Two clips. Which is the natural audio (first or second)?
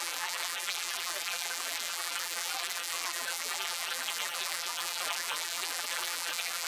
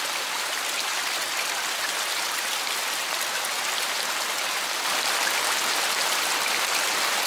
second